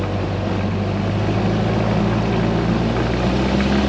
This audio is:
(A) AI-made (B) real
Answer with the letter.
B